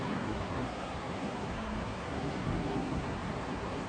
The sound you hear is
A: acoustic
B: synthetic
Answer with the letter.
B